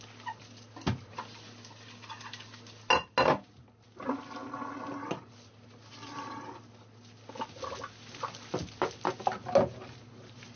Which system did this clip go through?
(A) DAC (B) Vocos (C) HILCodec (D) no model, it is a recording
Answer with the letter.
D